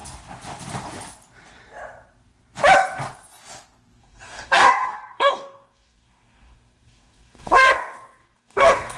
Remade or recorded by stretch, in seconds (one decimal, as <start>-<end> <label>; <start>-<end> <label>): 0.0-4.0 recorded; 4.0-9.0 remade

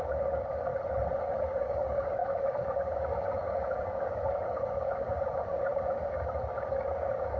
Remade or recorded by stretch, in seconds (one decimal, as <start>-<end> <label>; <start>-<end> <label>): 0.0-0.7 remade; 0.7-1.2 recorded; 1.2-7.4 remade

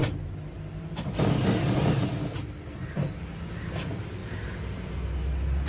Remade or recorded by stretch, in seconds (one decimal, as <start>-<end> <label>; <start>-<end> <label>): 0.0-5.7 recorded

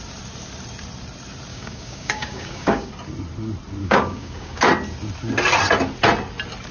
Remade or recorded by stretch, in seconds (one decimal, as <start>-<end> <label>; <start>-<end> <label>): 0.0-1.5 recorded; 1.5-2.9 remade; 2.9-3.8 recorded; 3.8-4.6 remade; 4.6-6.7 recorded

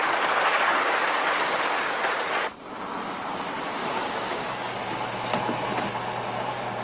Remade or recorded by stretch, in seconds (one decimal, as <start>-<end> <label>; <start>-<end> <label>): 0.0-0.7 recorded; 0.7-1.6 remade; 1.6-3.8 recorded; 3.8-4.8 remade; 4.8-6.8 recorded

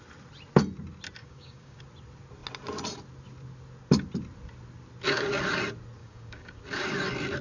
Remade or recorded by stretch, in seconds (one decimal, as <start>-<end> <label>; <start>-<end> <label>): 0.0-1.2 recorded; 1.2-1.8 remade; 1.8-6.0 recorded; 6.0-6.6 remade; 6.6-7.4 recorded